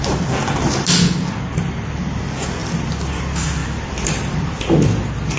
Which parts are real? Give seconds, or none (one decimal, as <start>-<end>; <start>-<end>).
0.0-2.6; 3.1-3.6; 4.6-5.4